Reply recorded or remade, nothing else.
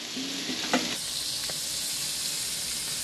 recorded